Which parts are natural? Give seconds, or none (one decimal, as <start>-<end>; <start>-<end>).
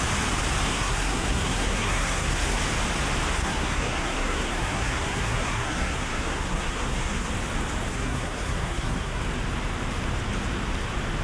0.0-0.7; 2.6-3.4; 7.3-7.9; 9.2-11.2